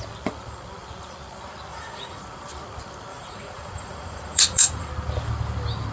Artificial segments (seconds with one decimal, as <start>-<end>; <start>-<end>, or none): 1.7-2.2; 3.1-4.9